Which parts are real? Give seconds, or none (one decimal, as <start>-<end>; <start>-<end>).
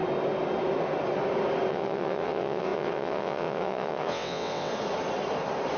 0.0-1.7; 4.7-5.8